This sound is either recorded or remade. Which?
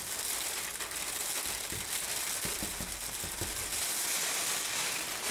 recorded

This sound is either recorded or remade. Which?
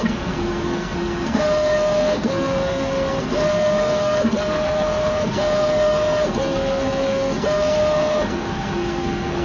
remade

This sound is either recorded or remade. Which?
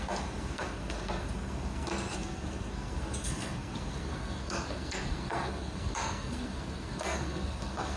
remade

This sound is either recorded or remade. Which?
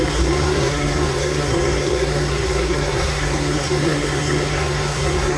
remade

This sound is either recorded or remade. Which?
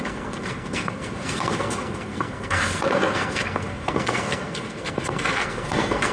remade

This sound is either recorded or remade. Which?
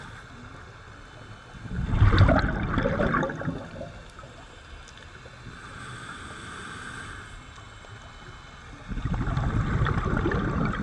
recorded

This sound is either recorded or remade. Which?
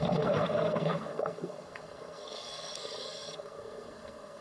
remade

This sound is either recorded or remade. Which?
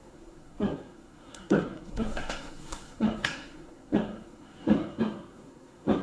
remade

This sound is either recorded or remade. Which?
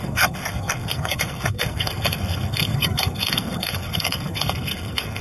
remade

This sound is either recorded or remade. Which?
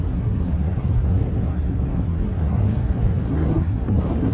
remade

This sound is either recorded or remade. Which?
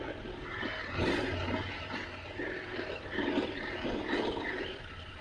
recorded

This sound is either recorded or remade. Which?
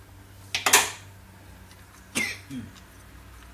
recorded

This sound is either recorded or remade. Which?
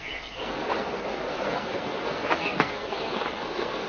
remade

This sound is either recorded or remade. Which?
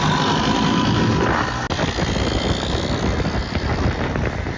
recorded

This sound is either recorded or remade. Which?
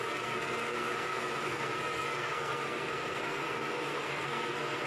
remade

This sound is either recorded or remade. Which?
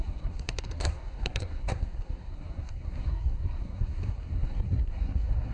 remade